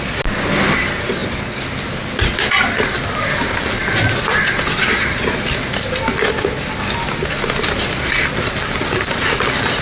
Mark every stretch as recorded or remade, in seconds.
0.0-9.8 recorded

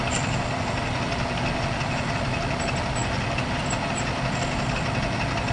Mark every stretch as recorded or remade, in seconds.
0.0-5.5 recorded

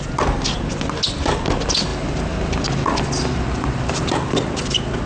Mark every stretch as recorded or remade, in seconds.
0.0-5.1 recorded

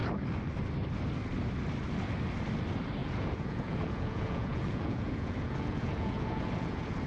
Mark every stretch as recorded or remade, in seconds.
0.0-3.0 recorded; 3.0-7.1 remade